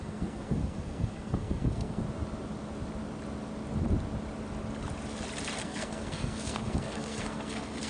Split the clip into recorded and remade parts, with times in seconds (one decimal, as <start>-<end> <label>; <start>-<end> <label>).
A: 0.0-2.0 remade; 2.0-5.6 recorded; 5.6-7.9 remade